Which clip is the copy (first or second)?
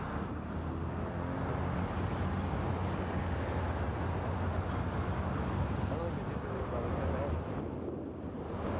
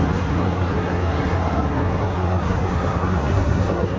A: second